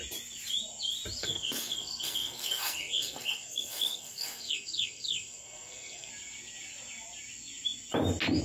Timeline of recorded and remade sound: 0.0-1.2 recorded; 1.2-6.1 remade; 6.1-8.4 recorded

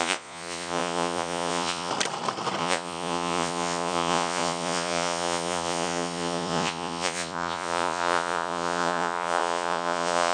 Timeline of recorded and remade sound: 0.0-1.9 remade; 1.9-2.6 recorded; 2.6-10.3 remade

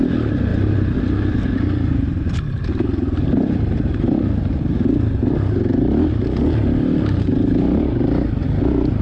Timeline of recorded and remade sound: 0.0-9.0 recorded

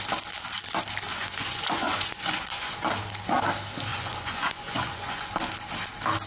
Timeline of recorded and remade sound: 0.0-1.1 recorded; 1.1-2.7 remade; 2.7-3.9 recorded; 3.9-5.3 remade; 5.3-6.3 recorded

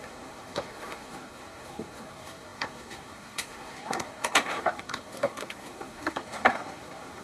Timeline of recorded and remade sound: 0.0-7.2 remade

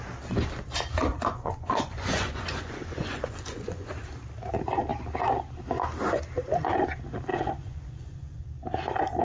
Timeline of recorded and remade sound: 0.0-1.1 recorded; 1.1-3.9 remade; 3.9-7.3 recorded; 7.3-8.4 remade; 8.4-9.2 recorded

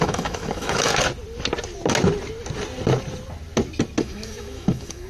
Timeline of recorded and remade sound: 0.0-0.9 remade; 0.9-4.0 recorded; 4.0-5.1 remade

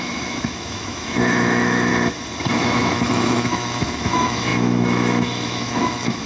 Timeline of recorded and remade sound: 0.0-1.9 remade; 1.9-2.5 recorded; 2.5-6.3 remade